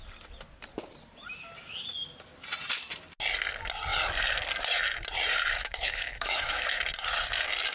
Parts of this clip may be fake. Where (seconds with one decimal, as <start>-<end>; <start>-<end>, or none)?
5.5-6.8